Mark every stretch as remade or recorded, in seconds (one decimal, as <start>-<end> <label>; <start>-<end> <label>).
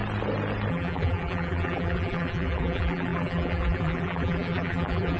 0.0-0.7 recorded; 0.7-5.2 remade